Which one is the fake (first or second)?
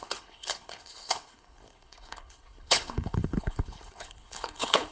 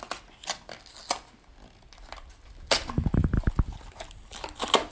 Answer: first